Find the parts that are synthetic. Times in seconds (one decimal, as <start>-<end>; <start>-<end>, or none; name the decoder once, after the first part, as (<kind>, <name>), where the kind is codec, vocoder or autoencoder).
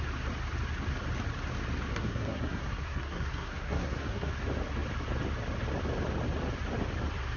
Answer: 1.9-4.3 (codec, SNAC)